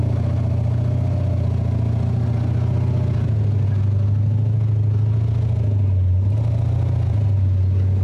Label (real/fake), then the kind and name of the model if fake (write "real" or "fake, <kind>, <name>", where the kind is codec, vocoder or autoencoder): real